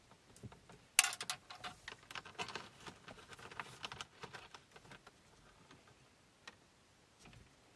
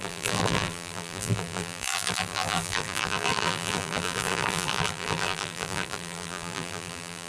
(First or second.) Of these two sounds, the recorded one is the first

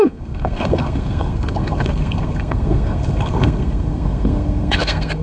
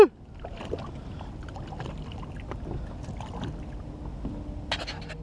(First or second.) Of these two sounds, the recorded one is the second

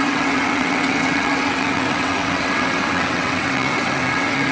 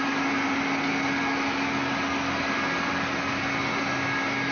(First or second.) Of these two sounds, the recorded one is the second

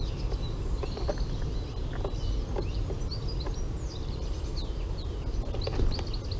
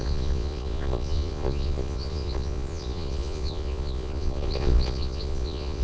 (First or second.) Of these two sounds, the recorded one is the first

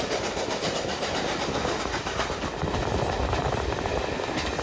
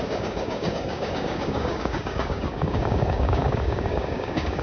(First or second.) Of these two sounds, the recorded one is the first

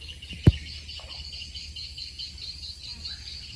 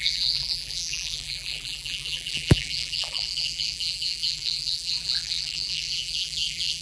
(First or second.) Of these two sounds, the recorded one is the first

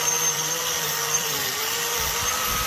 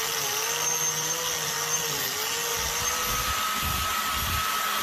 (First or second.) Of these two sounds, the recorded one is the second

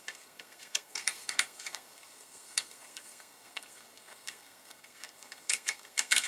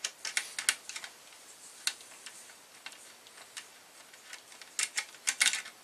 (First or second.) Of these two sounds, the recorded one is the second